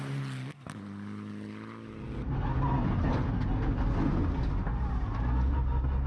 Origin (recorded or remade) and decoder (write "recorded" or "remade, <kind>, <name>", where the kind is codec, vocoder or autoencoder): recorded